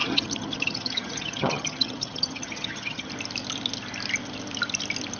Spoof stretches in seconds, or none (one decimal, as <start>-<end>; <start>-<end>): 0.0-3.1